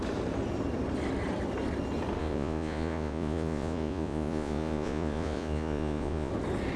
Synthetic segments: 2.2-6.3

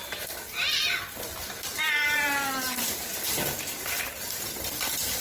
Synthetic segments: 1.7-3.9

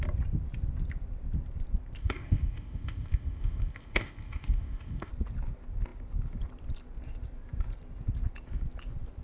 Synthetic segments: 2.0-5.1

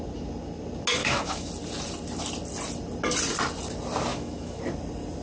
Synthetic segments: 1.0-1.5; 4.1-4.6

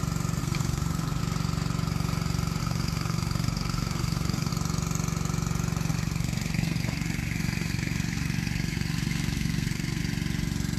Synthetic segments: 0.4-1.2; 2.6-4.5; 5.9-10.0

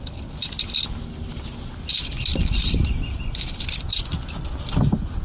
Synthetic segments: none